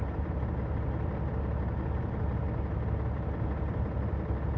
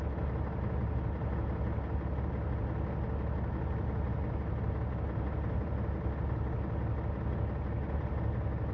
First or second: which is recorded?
second